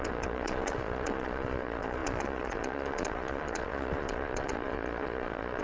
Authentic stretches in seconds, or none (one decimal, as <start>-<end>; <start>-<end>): none